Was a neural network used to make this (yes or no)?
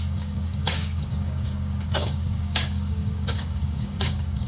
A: yes